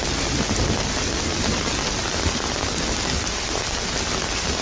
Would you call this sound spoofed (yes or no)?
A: no